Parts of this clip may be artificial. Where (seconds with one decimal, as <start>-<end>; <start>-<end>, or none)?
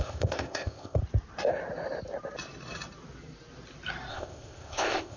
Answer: 0.0-1.0; 4.1-5.2